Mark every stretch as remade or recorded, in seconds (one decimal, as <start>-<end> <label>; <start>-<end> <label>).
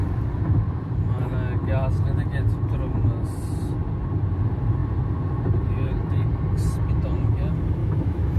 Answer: 0.0-7.8 recorded; 7.8-8.4 remade